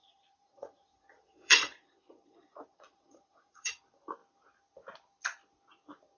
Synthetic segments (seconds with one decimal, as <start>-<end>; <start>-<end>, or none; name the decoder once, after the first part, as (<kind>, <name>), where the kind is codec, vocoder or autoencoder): 0.0-3.7 (vocoder, Vocos)